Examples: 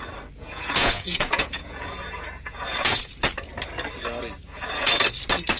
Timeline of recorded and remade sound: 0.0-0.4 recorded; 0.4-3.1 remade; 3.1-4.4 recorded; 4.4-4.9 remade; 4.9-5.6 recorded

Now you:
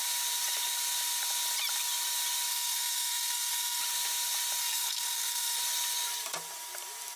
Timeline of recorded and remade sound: 0.0-2.5 recorded; 2.5-3.8 remade; 3.8-4.6 recorded; 4.6-5.6 remade; 5.6-7.2 recorded